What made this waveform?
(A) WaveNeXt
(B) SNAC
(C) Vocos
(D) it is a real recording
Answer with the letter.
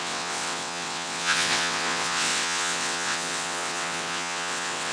A